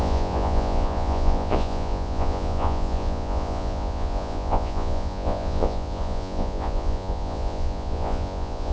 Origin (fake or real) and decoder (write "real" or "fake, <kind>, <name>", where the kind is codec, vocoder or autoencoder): fake, vocoder, Vocos